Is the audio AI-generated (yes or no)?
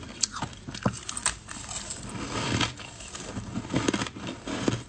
no